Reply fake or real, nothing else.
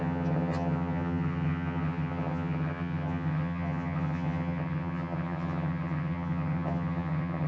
fake